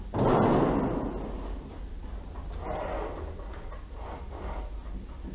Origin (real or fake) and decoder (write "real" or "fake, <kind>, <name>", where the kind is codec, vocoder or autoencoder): real